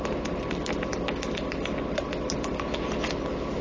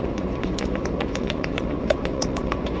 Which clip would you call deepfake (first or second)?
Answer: second